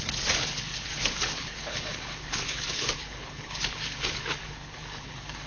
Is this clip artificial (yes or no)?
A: yes